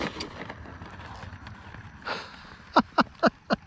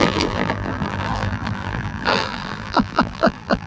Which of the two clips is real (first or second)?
first